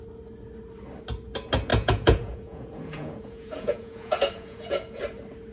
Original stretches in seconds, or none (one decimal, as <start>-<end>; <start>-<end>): 0.0-1.7; 5.0-5.5